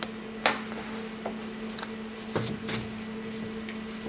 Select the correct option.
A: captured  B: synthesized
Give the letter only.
A